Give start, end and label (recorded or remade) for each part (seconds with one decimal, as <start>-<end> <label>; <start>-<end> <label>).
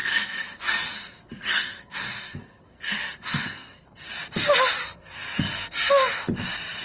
0.0-4.1 remade; 4.1-4.8 recorded; 4.8-5.9 remade; 5.9-6.8 recorded